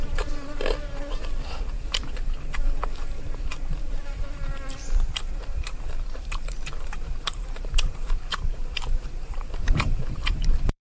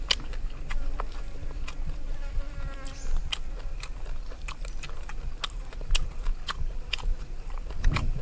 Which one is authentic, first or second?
second